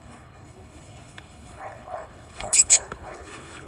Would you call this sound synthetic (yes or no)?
yes